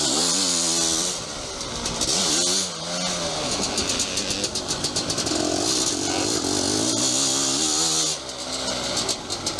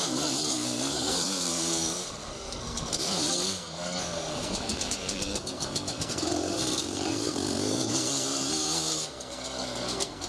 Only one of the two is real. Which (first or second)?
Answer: first